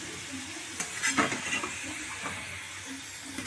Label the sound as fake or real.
real